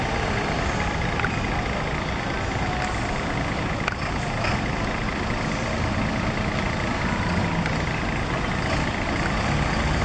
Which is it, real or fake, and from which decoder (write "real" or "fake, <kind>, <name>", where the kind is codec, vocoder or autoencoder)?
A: real